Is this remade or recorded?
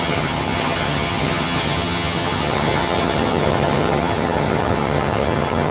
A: remade